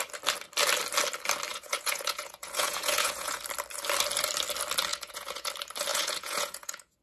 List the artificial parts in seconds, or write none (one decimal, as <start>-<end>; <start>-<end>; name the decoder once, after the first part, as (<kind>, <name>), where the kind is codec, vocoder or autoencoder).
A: 1.5-3.4 (vocoder, Vocos); 4.9-5.5; 5.9-7.0